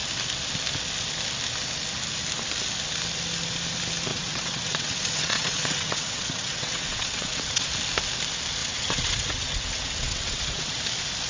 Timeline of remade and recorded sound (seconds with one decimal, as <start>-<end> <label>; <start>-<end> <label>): 0.0-4.1 recorded; 4.1-7.7 remade; 7.7-8.6 recorded; 8.6-10.8 remade; 10.8-11.3 recorded